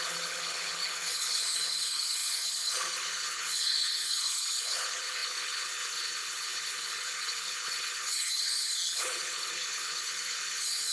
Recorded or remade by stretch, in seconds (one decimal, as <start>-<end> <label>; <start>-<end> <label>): 0.0-10.9 remade